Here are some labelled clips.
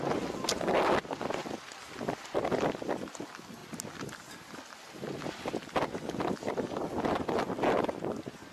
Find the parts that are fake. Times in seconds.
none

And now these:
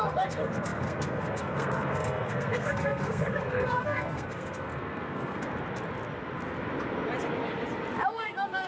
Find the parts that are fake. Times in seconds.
0.0-5.5 (codec, SNAC); 8.1-8.7

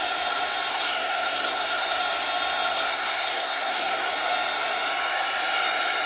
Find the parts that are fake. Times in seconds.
0.7-2.0 (codec, SNAC); 2.7-4.1

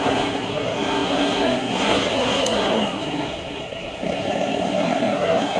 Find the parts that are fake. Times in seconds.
0.0-5.6 (codec, SNAC)

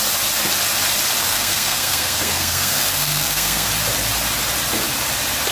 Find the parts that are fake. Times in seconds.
1.2-3.7 (codec, SNAC)